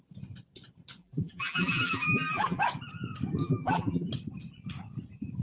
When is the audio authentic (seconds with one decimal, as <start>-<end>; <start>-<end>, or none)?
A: 0.0-1.0; 2.6-3.4; 4.1-5.4